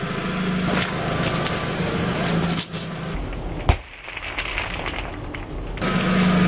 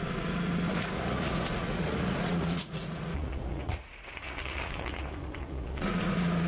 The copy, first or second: second